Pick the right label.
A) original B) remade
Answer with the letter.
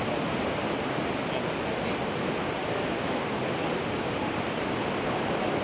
A